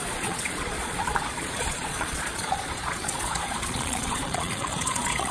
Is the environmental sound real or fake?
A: fake